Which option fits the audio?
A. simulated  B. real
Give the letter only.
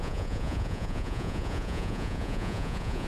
A